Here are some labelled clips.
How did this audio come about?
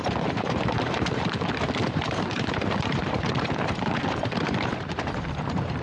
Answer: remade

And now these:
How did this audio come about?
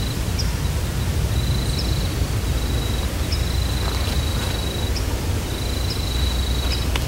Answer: recorded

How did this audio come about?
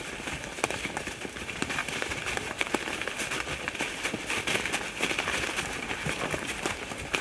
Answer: recorded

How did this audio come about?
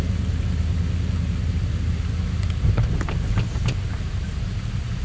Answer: recorded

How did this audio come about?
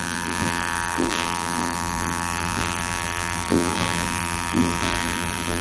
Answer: remade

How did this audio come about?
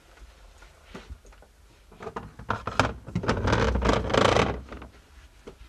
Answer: recorded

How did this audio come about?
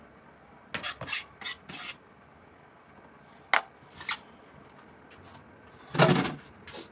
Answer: recorded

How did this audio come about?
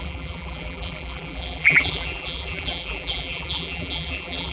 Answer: remade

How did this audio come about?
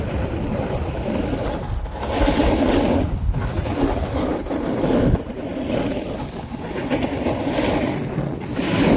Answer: recorded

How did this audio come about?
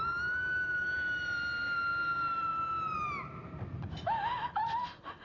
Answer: recorded